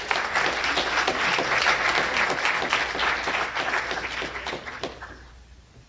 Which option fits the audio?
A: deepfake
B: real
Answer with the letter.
B